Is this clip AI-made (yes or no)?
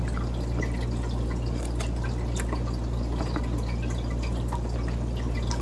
no